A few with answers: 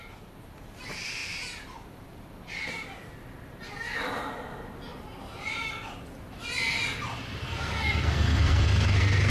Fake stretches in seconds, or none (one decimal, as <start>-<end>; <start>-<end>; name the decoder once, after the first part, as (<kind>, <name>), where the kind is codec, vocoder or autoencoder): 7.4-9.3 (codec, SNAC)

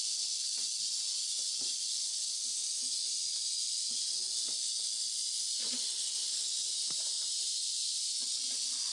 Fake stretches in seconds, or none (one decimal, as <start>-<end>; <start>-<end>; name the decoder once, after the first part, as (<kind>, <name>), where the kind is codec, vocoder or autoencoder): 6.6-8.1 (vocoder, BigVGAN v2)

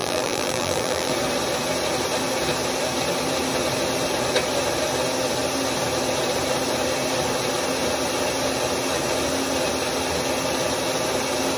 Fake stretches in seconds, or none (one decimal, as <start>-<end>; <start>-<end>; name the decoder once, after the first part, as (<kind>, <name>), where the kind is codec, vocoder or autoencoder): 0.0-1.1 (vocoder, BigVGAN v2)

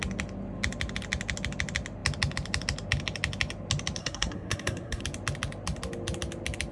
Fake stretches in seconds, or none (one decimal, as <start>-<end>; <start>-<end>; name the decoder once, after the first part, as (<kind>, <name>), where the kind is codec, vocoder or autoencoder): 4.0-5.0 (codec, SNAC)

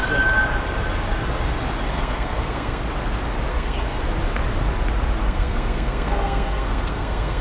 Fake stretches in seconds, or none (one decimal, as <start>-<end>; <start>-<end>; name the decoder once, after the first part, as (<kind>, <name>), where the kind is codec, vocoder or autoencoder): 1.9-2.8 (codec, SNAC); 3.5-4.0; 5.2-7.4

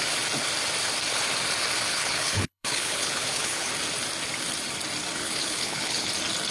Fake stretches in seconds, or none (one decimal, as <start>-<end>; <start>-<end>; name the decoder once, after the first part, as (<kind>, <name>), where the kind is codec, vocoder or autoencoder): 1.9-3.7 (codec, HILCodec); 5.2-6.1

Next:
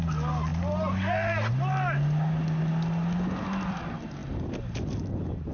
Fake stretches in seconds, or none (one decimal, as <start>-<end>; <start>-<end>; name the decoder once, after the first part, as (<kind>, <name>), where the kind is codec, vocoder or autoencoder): none

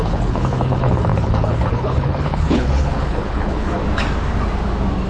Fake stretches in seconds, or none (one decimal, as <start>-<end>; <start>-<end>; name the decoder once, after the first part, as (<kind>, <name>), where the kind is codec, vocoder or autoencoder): 0.0-3.8 (codec, HILCodec)